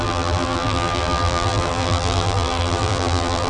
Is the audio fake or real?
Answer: fake